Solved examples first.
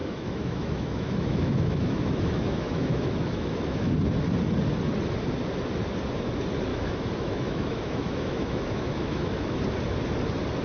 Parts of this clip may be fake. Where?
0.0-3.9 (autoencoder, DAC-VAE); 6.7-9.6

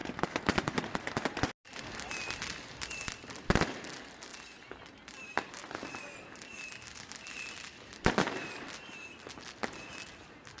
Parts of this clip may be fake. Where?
none

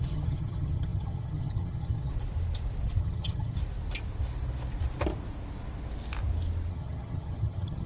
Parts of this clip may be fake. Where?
0.0-2.1 (vocoder, HiFi-GAN); 3.0-3.6; 6.7-7.9

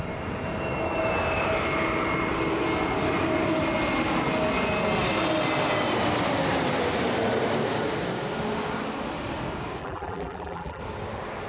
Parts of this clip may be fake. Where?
9.8-10.8 (vocoder, BigVGAN v2)

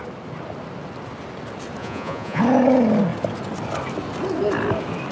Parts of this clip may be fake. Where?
1.8-2.4 (vocoder, Vocos)

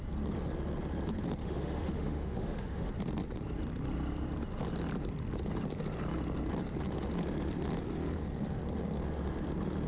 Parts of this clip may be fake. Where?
1.4-2.9 (autoencoder, DAC-VAE)

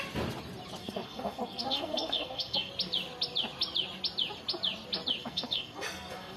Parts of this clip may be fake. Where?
0.8-2.7 (codec, SNAC); 5.2-6.4